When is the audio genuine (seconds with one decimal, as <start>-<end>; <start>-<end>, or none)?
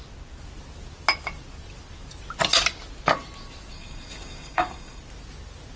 0.0-3.7; 5.0-5.8